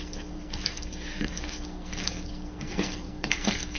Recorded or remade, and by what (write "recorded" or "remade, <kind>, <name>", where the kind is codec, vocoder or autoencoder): remade, codec, SNAC